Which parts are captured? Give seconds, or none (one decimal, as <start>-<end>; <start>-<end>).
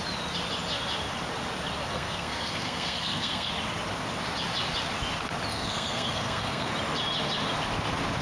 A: 0.0-1.9; 3.5-5.5; 6.7-8.2